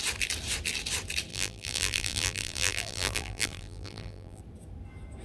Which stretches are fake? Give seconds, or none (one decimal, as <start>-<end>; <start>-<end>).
1.3-4.4